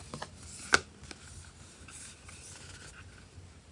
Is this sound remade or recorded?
recorded